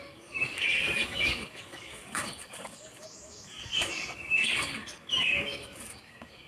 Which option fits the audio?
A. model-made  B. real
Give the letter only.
A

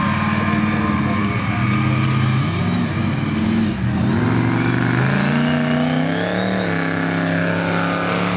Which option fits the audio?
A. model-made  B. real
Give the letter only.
B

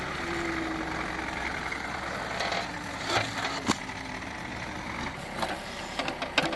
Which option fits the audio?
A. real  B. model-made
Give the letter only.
A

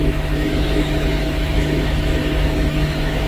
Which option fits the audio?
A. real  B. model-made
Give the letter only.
B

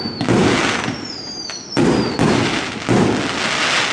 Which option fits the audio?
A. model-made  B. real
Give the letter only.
B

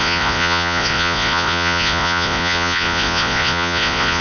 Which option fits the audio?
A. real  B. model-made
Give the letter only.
B